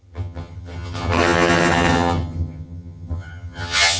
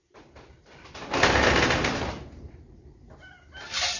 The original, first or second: second